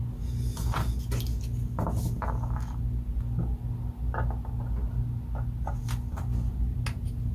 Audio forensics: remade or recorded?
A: recorded